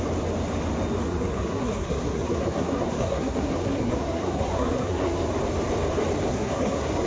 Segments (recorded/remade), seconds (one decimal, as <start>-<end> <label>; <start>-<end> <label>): 0.0-1.0 recorded; 1.0-5.3 remade; 5.3-6.3 recorded; 6.3-7.1 remade